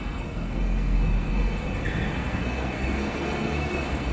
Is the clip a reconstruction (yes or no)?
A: yes